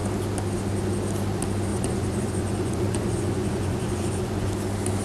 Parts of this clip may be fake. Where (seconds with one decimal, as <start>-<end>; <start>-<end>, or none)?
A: 1.7-4.5